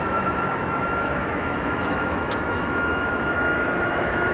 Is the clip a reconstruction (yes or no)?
yes